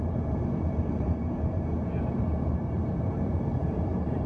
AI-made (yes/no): yes